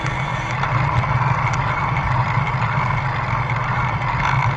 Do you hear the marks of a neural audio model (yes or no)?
no